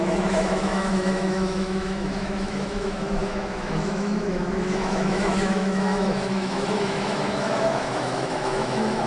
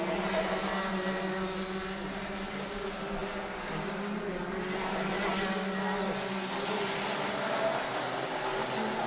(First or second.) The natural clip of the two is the second